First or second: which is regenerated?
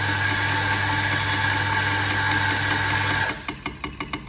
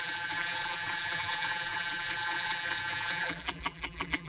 second